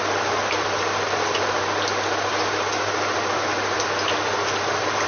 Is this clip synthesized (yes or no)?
no